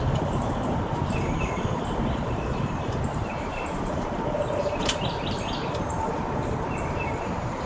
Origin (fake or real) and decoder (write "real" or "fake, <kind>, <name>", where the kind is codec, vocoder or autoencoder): fake, vocoder, BigVGAN v2